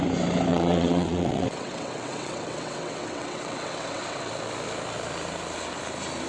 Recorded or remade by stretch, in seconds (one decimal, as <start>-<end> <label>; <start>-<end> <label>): 0.0-0.5 recorded; 0.5-4.3 remade; 4.3-6.3 recorded